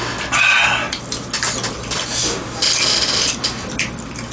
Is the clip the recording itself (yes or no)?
yes